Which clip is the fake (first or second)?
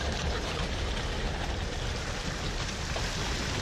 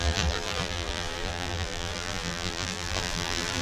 second